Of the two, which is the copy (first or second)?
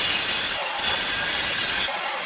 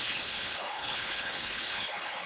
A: second